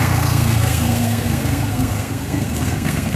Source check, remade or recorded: remade